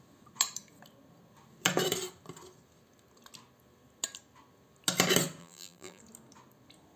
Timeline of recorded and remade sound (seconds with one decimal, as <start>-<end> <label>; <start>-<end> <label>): 0.0-5.4 recorded; 5.4-6.0 remade; 6.0-7.0 recorded